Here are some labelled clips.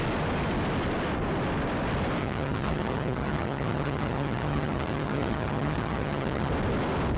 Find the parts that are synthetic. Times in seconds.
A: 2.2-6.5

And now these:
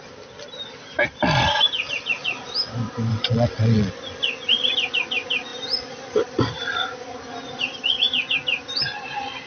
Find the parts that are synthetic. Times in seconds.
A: 3.1-3.9

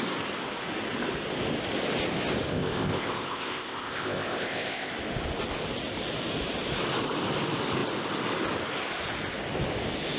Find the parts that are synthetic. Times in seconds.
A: 2.5-4.9

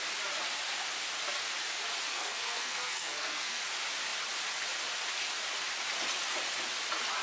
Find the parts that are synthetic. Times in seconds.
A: 2.1-3.6